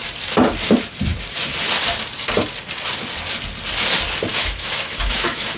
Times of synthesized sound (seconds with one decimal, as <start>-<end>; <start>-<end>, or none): 4.3-5.6